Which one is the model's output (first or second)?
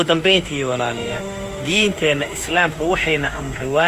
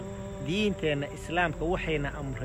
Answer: first